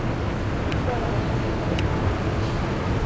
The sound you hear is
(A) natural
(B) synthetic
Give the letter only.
A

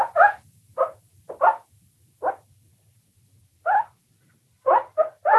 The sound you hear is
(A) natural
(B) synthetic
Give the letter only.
B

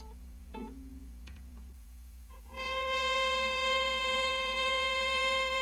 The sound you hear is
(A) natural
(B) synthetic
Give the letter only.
B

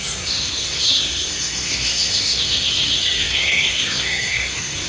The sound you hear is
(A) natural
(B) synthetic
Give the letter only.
B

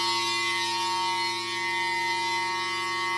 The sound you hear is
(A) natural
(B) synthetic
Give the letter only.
A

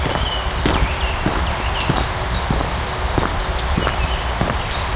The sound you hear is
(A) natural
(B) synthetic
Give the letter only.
B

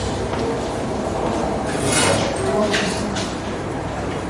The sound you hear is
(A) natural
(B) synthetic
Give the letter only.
B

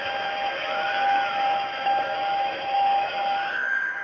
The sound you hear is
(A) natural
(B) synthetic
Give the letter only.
B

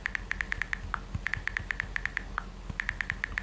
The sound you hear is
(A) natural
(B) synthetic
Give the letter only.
A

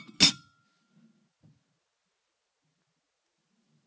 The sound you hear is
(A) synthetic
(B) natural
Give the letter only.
B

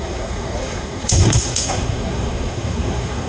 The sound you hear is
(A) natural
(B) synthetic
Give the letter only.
B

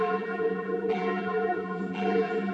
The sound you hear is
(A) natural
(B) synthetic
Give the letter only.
B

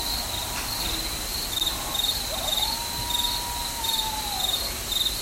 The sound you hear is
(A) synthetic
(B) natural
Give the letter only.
B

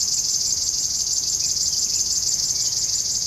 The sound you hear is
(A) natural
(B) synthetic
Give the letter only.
B